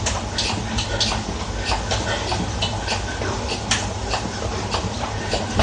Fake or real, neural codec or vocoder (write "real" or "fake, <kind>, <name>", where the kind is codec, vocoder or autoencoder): real